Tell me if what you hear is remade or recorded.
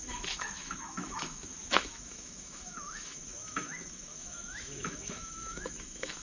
remade